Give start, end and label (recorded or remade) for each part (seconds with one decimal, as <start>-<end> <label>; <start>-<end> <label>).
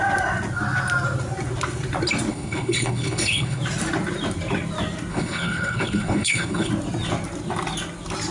0.0-2.3 recorded; 2.3-3.6 remade; 3.6-5.1 recorded; 5.1-6.7 remade; 6.7-8.3 recorded